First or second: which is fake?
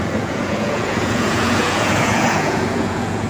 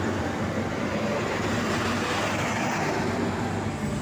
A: first